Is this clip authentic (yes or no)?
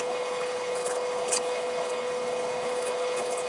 no